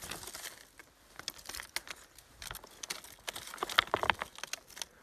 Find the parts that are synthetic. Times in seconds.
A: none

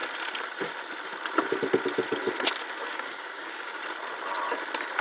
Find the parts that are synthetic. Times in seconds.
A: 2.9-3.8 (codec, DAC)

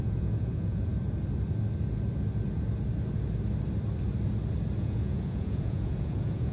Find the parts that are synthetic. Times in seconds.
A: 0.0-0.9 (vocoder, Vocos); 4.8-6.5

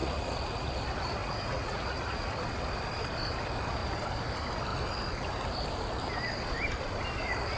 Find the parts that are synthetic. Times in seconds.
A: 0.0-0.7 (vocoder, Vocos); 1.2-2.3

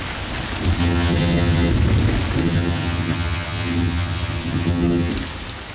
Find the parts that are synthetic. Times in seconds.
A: 0.8-1.7 (vocoder, HiFi-GAN); 2.4-5.1

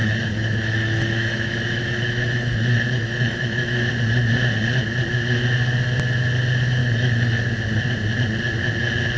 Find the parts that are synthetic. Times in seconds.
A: 0.0-3.9 (autoencoder, DAC-VAE); 6.8-7.4